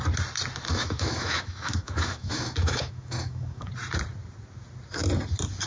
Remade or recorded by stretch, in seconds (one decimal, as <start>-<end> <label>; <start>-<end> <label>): 0.0-0.7 recorded; 0.7-3.7 remade; 3.7-5.7 recorded